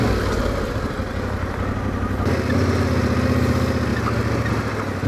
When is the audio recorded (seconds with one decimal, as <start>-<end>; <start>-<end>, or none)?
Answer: 0.0-5.1